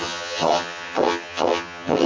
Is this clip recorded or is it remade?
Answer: remade